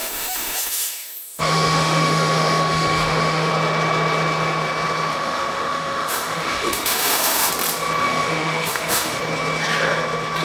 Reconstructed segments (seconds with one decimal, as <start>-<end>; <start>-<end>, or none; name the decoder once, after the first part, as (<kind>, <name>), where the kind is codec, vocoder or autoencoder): 0.0-3.5 (autoencoder, DAC-VAE); 5.1-7.5; 8.0-9.2